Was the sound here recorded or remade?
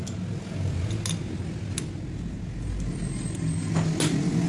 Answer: recorded